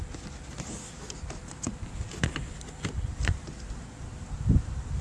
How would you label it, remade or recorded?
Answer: recorded